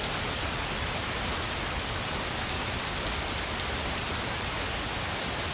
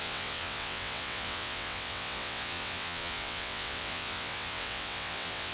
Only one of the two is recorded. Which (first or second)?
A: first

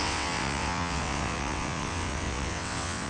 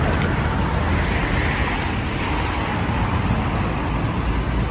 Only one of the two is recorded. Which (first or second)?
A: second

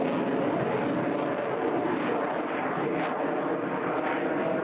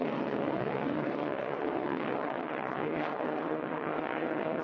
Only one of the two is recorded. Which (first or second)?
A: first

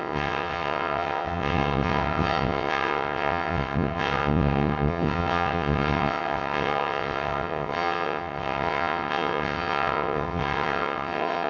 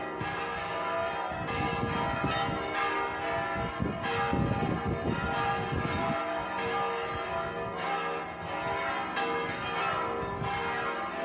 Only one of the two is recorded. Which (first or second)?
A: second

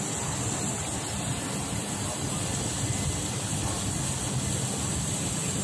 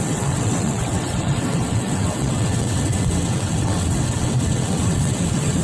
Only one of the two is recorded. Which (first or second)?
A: first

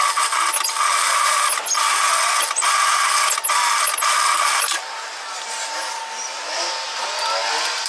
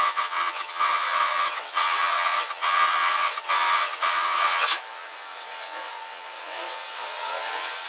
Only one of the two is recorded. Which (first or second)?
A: first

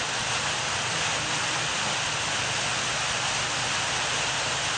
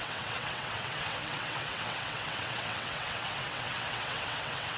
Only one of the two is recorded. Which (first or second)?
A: first